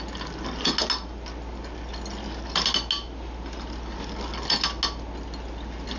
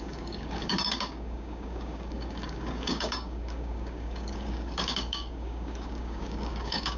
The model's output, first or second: second